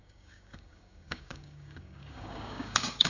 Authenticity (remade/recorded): remade